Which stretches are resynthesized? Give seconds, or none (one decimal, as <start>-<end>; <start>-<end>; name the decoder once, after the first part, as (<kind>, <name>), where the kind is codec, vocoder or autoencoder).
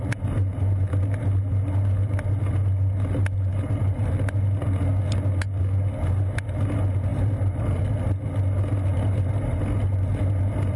3.5-4.1 (vocoder, BigVGAN v2); 7.1-7.8; 8.9-9.6